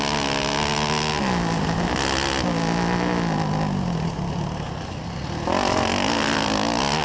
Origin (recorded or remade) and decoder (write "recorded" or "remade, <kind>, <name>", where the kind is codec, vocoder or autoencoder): recorded